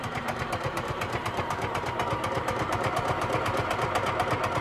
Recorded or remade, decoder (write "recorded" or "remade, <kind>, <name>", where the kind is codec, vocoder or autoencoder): remade, vocoder, BigVGAN v2